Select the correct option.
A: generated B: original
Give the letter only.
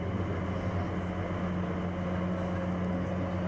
B